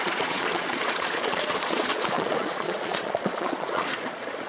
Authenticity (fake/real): fake